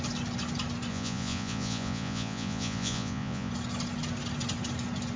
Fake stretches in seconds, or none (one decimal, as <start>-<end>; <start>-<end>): 0.9-3.5